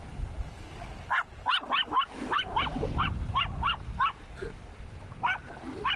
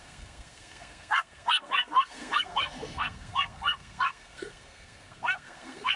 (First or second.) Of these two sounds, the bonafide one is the first